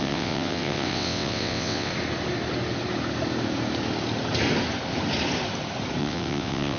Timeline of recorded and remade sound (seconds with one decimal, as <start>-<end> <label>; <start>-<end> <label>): 0.0-1.9 remade; 1.9-6.0 recorded; 6.0-6.8 remade